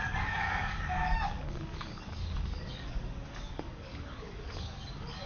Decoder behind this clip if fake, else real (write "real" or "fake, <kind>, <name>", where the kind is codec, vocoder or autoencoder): fake, codec, DAC